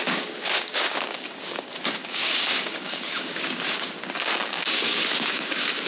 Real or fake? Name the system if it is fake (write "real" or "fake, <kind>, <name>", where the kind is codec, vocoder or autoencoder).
fake, codec, DAC